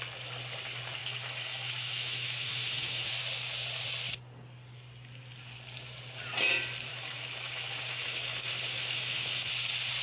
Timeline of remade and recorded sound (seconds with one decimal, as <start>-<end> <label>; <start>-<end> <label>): 0.0-1.0 recorded; 1.0-3.1 remade; 3.1-6.9 recorded; 6.9-9.5 remade; 9.5-10.0 recorded

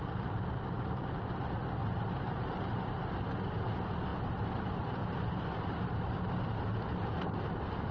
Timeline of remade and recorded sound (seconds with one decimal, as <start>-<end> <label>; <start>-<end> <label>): 0.0-1.8 recorded; 1.8-3.2 remade; 3.2-4.1 recorded; 4.1-4.6 remade; 4.6-5.0 recorded; 5.0-5.9 remade; 5.9-7.9 recorded

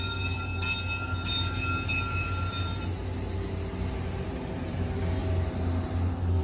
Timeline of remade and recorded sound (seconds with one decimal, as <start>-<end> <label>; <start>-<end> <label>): 0.0-0.5 remade; 0.5-4.3 recorded; 4.3-5.2 remade; 5.2-6.4 recorded

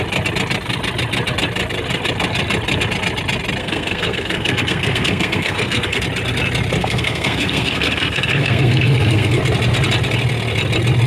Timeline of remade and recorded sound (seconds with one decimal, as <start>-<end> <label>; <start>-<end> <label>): 0.0-3.6 recorded; 3.6-6.0 remade; 6.0-6.8 recorded; 6.8-9.4 remade; 9.4-11.1 recorded